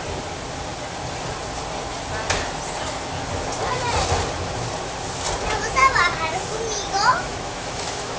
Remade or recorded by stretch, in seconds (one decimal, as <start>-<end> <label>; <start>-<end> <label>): 0.0-7.1 recorded; 7.1-8.2 remade